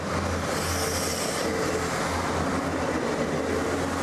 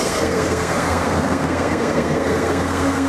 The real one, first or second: first